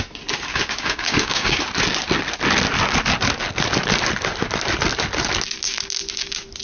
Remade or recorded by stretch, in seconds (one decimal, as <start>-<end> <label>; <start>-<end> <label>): 0.0-0.5 recorded; 0.5-1.6 remade; 1.6-6.6 recorded